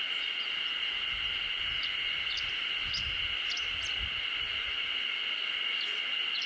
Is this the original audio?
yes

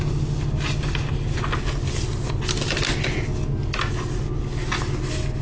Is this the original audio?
yes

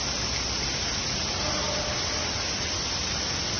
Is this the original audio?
yes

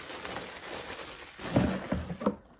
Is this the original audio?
yes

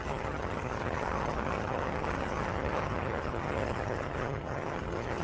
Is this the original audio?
no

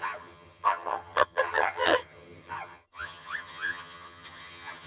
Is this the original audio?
no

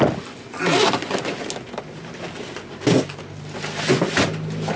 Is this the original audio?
yes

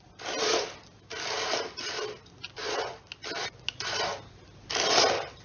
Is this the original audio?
yes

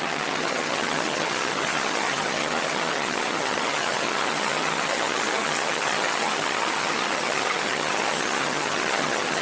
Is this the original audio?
no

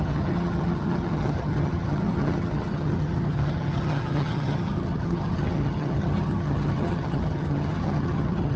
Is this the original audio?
no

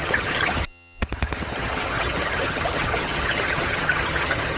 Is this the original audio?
no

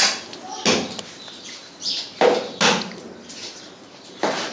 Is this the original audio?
yes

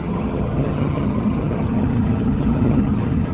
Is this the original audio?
no